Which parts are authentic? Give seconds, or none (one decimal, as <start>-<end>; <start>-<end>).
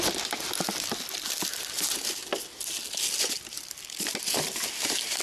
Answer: 0.0-5.2